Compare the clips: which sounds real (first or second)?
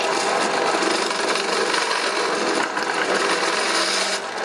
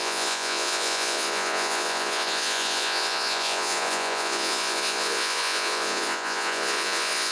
first